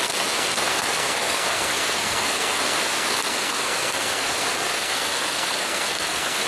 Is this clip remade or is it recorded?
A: remade